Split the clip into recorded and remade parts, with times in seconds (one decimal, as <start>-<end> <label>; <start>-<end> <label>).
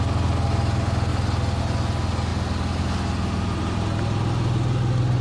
0.0-5.2 recorded